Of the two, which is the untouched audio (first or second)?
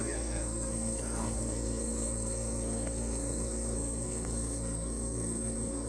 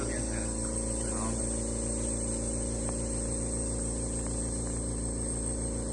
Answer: second